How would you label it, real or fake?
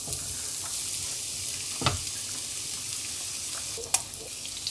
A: real